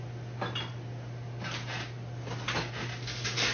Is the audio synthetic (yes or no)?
no